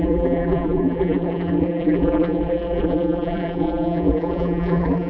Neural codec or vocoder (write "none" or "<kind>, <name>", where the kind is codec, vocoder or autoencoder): vocoder, BigVGAN v2